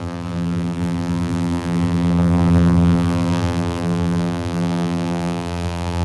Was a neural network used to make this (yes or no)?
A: yes